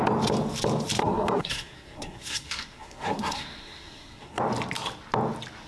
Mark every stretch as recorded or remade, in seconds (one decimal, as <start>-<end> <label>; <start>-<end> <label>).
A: 0.0-1.0 recorded; 1.0-4.4 remade; 4.4-5.7 recorded